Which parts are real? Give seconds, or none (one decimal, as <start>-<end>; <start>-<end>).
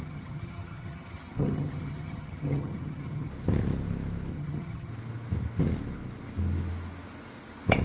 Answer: 3.3-4.3; 4.9-7.8